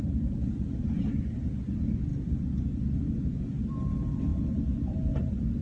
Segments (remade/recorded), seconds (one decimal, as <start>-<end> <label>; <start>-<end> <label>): 0.0-2.1 remade; 2.1-3.6 recorded; 3.6-5.6 remade